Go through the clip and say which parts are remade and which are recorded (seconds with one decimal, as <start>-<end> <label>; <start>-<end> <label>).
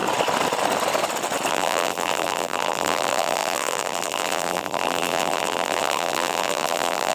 0.0-1.5 recorded; 1.5-7.1 remade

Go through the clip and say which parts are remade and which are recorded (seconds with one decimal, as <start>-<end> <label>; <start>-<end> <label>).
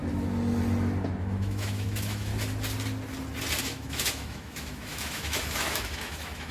0.0-1.2 recorded; 1.2-2.3 remade; 2.3-3.6 recorded; 3.6-6.5 remade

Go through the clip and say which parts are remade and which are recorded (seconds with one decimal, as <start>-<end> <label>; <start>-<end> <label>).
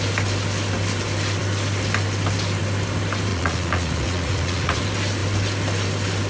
0.0-3.3 recorded; 3.3-4.8 remade; 4.8-6.3 recorded